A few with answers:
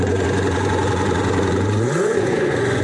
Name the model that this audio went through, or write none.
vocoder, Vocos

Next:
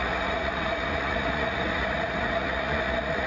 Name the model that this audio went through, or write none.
vocoder, Vocos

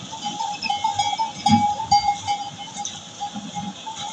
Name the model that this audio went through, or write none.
none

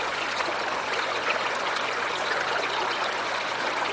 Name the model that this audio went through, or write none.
vocoder, Vocos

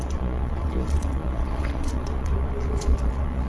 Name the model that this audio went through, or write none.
vocoder, Vocos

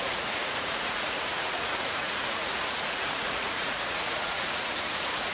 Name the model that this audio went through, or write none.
vocoder, Vocos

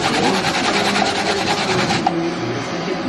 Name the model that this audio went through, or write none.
none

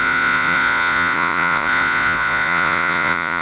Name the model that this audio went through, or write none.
vocoder, Vocos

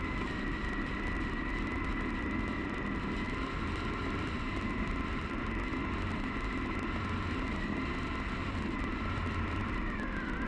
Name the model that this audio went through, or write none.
none